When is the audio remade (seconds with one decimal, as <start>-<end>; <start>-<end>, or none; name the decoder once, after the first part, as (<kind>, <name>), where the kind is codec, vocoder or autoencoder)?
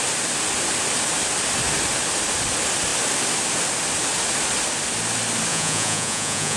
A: 5.5-6.6 (vocoder, Vocos)